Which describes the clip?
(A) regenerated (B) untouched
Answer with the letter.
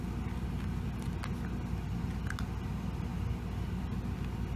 B